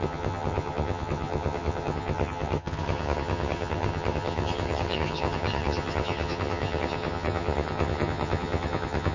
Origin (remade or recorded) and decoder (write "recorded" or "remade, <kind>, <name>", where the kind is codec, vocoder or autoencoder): remade, vocoder, HiFi-GAN